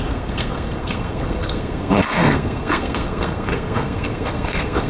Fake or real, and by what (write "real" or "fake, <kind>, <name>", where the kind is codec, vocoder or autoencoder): fake, codec, SNAC